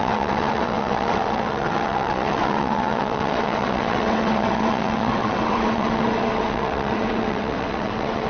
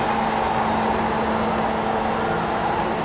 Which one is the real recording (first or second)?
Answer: second